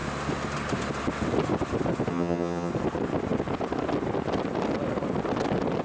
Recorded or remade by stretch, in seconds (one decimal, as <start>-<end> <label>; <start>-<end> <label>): 0.0-2.1 recorded; 2.1-2.7 remade; 2.7-5.8 recorded